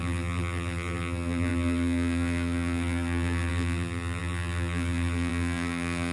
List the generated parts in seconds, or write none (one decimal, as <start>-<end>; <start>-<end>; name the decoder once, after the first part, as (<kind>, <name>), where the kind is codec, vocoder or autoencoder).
0.0-6.1 (vocoder, BigVGAN v2)